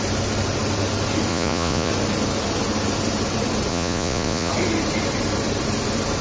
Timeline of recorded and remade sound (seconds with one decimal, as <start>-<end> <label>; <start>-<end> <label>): 0.0-1.3 recorded; 1.3-1.9 remade; 1.9-3.7 recorded; 3.7-4.5 remade; 4.5-6.2 recorded